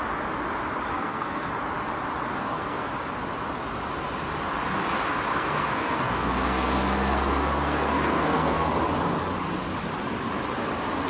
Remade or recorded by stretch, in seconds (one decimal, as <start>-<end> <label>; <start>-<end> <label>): 0.0-0.9 recorded; 0.9-1.5 remade; 1.5-2.4 recorded; 2.4-2.9 remade; 2.9-5.3 recorded; 5.3-8.7 remade; 8.7-11.1 recorded